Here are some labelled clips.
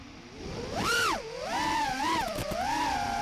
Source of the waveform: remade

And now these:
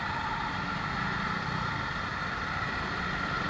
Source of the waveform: recorded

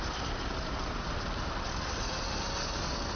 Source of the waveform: recorded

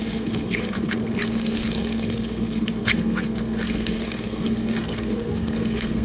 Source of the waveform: remade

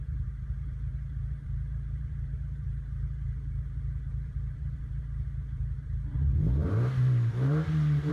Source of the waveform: remade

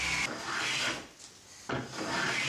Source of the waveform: recorded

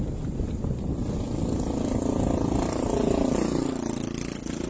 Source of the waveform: recorded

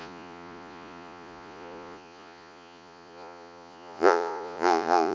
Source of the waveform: remade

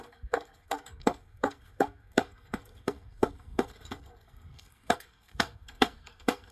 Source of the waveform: remade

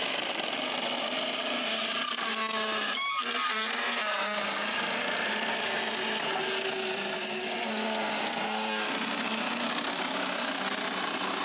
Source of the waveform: recorded